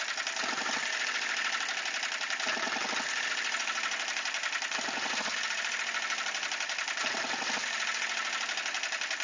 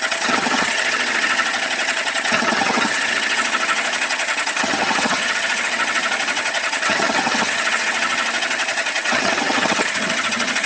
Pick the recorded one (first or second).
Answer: first